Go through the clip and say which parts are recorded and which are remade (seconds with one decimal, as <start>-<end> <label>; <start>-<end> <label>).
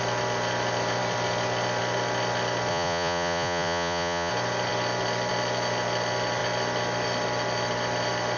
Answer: 0.0-2.7 recorded; 2.7-4.3 remade; 4.3-8.4 recorded